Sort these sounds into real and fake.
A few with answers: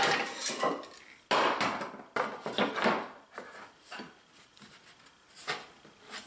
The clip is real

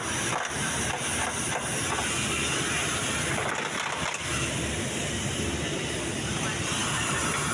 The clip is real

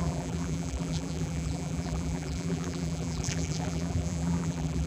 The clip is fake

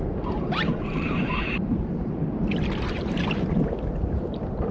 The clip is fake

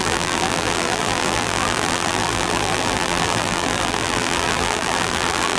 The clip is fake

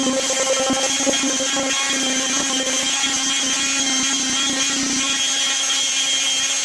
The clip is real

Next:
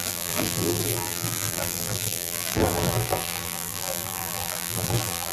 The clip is fake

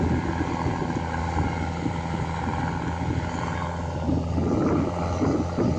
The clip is real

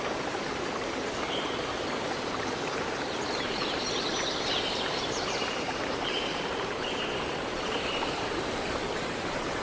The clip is fake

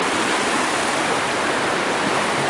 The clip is real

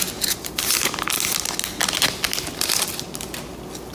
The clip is real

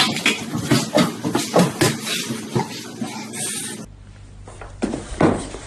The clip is real